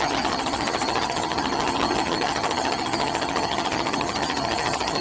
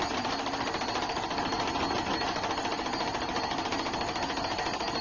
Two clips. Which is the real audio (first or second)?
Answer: second